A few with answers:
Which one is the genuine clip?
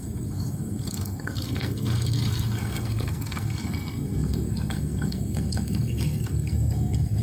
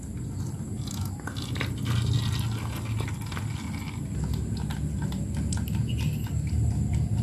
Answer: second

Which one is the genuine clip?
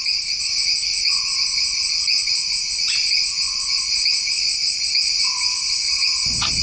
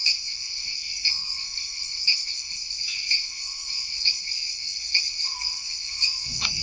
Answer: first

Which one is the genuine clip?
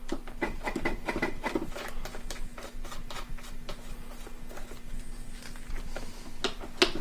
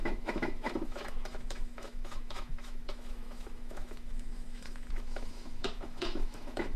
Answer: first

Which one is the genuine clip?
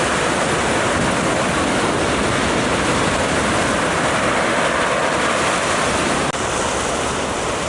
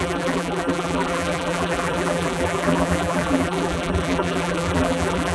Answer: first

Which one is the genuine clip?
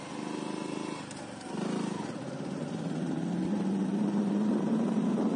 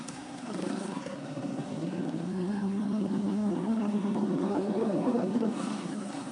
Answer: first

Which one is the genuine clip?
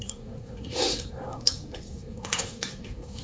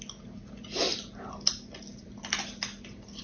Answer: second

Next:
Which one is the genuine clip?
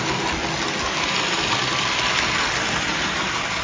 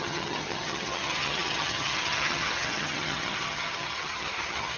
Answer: first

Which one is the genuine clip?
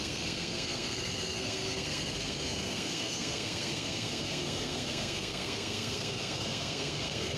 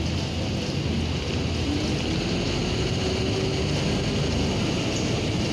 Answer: second